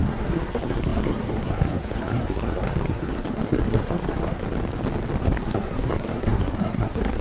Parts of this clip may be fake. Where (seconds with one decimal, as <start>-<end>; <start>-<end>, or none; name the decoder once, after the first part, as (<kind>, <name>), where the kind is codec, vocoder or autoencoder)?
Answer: 0.0-4.4 (codec, SNAC); 5.2-7.2